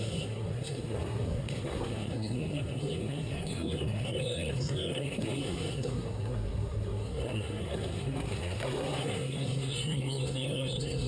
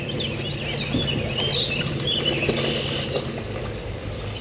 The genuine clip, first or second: second